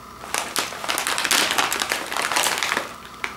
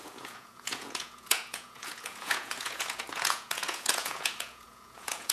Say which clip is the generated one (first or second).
second